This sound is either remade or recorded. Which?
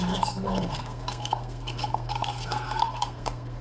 remade